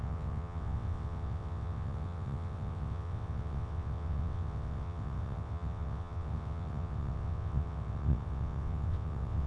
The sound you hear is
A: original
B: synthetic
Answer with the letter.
B